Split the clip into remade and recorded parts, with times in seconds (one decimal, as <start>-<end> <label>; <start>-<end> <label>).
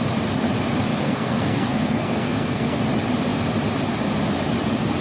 0.0-0.9 recorded; 0.9-2.8 remade; 2.8-5.0 recorded